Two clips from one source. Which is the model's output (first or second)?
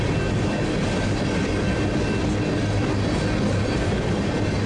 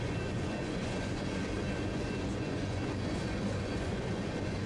second